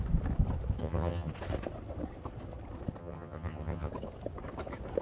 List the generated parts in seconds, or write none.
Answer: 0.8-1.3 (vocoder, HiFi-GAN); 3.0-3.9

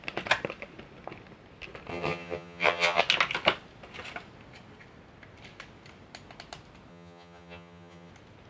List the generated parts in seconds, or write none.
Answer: 1.9-3.0 (vocoder, HiFi-GAN); 6.9-8.1

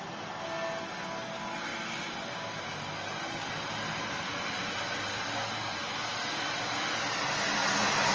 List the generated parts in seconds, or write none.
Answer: none